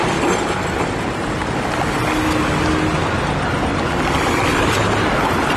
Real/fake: real